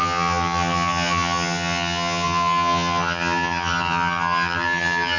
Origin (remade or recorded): remade